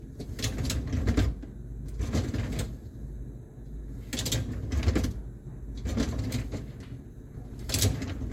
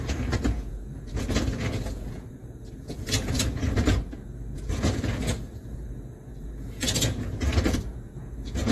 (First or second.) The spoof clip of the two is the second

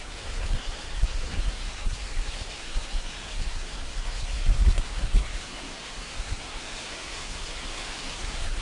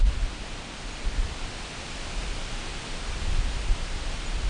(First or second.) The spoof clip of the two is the first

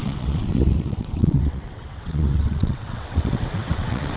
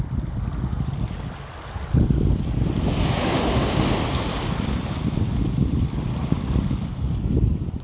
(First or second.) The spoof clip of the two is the first